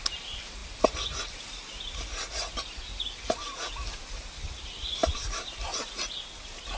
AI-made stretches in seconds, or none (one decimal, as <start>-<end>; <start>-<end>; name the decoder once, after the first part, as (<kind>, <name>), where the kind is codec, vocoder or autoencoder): none